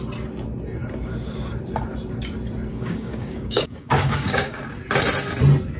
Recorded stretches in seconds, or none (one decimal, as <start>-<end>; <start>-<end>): 0.0-2.7; 4.6-5.8